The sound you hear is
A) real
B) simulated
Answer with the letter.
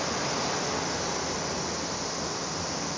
A